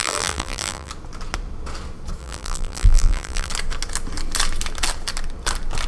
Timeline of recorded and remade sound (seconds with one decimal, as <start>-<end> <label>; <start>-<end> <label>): 0.0-0.9 remade; 0.9-2.2 recorded; 2.2-3.5 remade; 3.5-5.9 recorded